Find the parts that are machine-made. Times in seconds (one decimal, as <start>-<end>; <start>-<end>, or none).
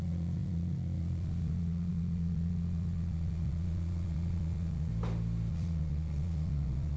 0.0-4.9; 5.5-7.0